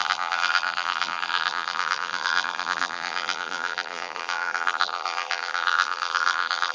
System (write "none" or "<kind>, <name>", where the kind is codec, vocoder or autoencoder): vocoder, BigVGAN v2